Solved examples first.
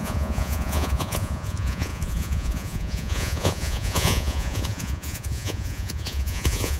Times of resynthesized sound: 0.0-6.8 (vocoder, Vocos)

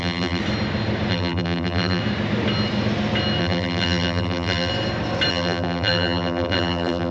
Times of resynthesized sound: 0.0-0.4 (vocoder, BigVGAN v2); 1.1-2.0; 3.4-4.7; 5.3-7.1

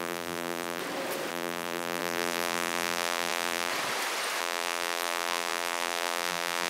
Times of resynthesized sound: 0.0-0.8 (vocoder, BigVGAN v2); 1.3-3.7; 4.4-6.7

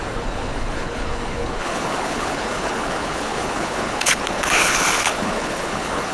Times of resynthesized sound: 0.0-6.1 (codec, HILCodec)

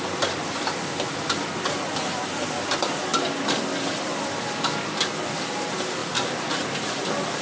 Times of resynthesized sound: 6.0-6.7 (vocoder, BigVGAN v2)